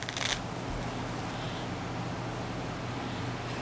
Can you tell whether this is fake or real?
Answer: real